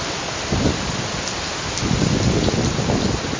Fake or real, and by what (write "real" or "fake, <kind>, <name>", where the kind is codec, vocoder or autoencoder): real